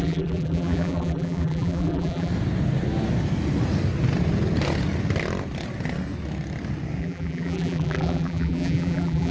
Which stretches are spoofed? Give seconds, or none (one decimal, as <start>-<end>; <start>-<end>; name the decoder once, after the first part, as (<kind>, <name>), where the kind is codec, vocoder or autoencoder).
0.0-2.3 (vocoder, BigVGAN v2); 7.0-9.3